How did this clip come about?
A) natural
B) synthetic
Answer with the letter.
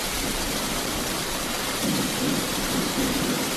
B